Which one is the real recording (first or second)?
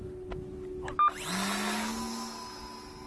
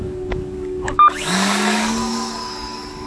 first